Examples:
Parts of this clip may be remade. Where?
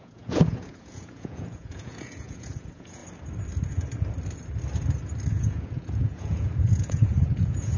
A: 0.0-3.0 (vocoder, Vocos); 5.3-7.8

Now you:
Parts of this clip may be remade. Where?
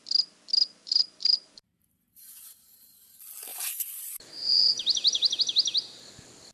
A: 0.8-1.8 (vocoder, BigVGAN v2); 3.5-5.4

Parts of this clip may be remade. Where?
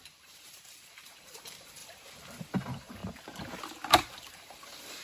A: 0.0-3.0 (vocoder, BigVGAN v2); 4.3-5.0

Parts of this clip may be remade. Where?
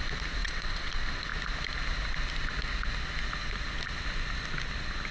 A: 0.4-0.9 (vocoder, WaveNeXt)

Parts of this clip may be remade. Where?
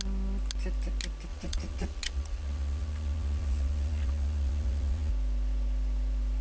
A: 1.3-5.1 (vocoder, Vocos)